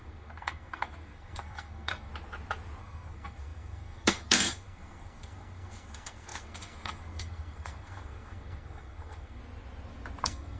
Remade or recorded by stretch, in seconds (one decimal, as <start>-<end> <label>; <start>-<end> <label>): 0.0-2.1 remade; 2.1-2.8 recorded; 2.8-9.4 remade; 9.4-10.2 recorded; 10.2-10.6 remade